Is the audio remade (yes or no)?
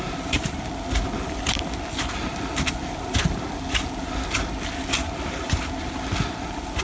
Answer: no